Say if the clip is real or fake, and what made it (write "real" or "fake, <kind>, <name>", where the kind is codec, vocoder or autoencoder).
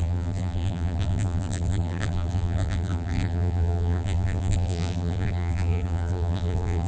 fake, vocoder, BigVGAN v2